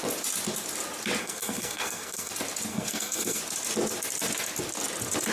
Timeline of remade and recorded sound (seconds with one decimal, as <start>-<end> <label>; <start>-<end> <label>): 0.0-1.2 recorded; 1.2-2.3 remade; 2.3-2.7 recorded; 2.7-3.4 remade; 3.4-5.3 recorded